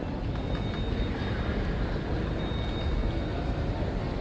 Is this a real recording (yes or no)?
yes